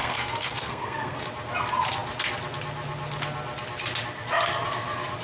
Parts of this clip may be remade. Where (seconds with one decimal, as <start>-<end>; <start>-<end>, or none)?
0.0-1.2